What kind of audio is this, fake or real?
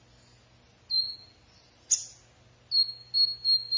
real